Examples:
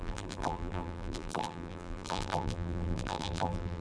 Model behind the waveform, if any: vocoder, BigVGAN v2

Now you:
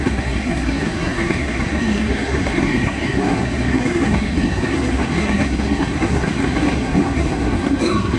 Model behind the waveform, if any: codec, SNAC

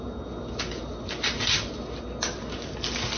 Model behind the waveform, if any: none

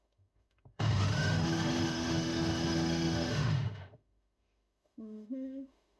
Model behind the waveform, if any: autoencoder, DAC-VAE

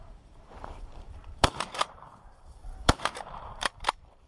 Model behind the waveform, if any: vocoder, BigVGAN v2